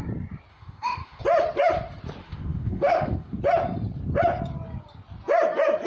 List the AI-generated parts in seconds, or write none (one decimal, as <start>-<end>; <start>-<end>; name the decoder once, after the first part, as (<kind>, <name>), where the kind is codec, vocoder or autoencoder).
0.5-1.2 (autoencoder, DAC-VAE); 2.2-3.4